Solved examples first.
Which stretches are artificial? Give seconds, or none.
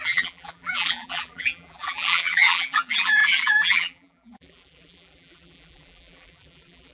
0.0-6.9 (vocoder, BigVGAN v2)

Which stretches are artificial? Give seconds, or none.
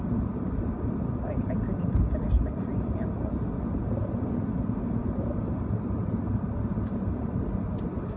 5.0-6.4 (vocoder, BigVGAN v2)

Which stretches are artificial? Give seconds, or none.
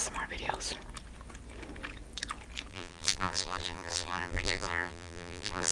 2.7-5.7 (vocoder, BigVGAN v2)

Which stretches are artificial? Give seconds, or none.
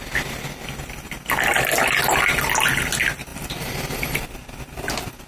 3.3-3.9 (vocoder, BigVGAN v2)